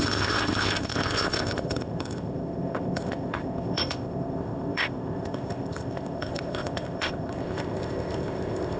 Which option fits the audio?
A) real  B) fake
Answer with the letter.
B